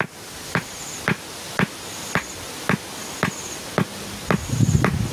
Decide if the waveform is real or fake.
real